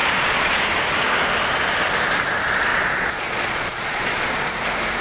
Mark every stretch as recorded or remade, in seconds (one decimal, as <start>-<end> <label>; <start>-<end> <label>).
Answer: 0.0-0.6 remade; 0.6-2.7 recorded; 2.7-4.5 remade; 4.5-5.0 recorded